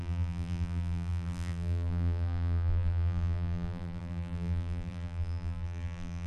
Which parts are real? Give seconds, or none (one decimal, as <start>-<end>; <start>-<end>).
none